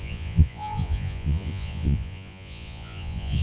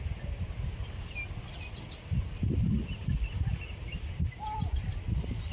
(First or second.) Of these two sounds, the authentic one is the second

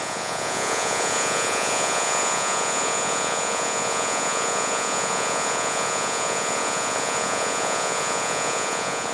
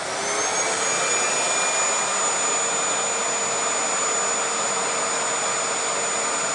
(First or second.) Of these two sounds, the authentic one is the second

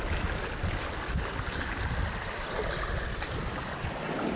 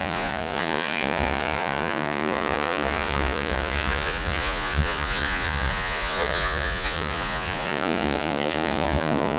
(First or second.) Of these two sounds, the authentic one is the first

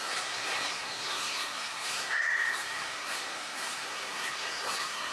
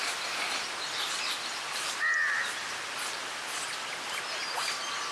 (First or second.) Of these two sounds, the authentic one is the second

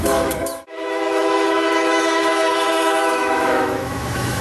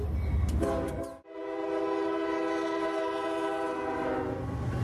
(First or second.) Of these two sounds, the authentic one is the second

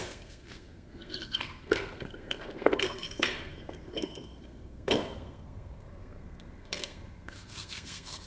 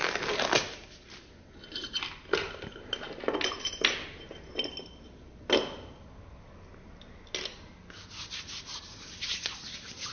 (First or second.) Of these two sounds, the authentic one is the second